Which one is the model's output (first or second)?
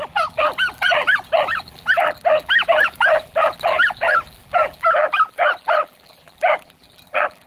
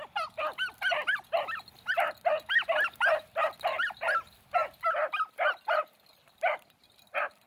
first